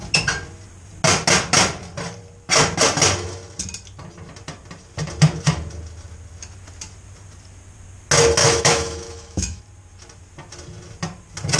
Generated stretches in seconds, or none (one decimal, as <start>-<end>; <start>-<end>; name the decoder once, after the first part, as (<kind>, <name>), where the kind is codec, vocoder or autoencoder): 8.4-9.6 (autoencoder, DAC-VAE)